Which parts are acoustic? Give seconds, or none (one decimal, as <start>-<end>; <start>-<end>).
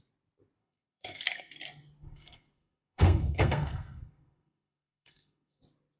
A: 0.0-0.6; 1.5-2.0; 5.6-6.0